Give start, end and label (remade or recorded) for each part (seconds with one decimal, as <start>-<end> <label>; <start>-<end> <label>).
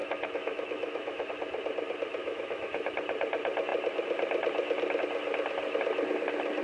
0.0-1.3 remade; 1.3-2.2 recorded; 2.2-2.9 remade; 2.9-6.6 recorded